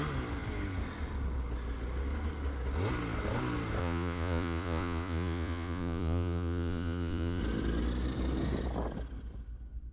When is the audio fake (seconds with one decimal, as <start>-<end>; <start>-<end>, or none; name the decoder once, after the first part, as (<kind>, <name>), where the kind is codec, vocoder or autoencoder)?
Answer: 3.8-7.4 (vocoder, Vocos)

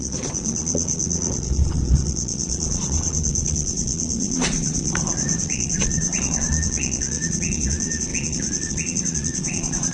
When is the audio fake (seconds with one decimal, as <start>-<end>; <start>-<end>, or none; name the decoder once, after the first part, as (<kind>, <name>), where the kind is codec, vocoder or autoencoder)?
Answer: 0.0-9.9 (vocoder, Vocos)

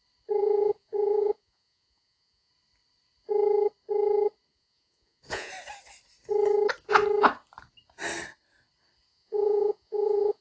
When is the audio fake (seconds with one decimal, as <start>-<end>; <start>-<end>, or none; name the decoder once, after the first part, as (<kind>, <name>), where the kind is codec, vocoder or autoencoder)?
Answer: 0.4-2.5 (vocoder, Vocos); 4.5-5.5; 9.1-10.4

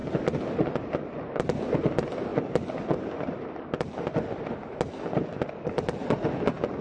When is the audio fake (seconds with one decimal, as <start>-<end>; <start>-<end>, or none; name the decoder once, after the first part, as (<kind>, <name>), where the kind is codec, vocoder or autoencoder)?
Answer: none

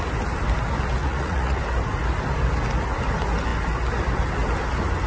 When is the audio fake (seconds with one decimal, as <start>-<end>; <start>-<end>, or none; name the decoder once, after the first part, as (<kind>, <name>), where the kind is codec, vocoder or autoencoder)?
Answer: 1.0-1.6 (vocoder, Vocos)